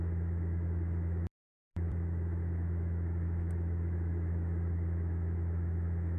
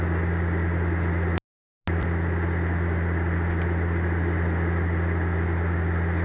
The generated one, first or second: first